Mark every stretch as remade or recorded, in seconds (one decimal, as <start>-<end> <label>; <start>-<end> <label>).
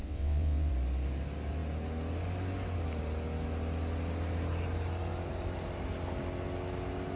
0.0-0.7 remade; 0.7-7.2 recorded